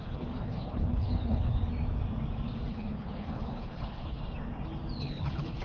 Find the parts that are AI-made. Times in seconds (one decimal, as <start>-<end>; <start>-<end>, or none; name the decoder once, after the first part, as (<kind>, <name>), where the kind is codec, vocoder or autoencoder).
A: 0.0-1.6 (codec, HILCodec); 2.7-4.2; 5.0-5.6